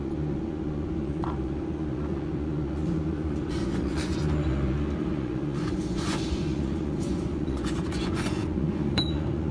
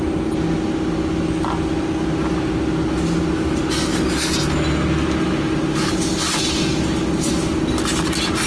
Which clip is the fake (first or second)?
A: first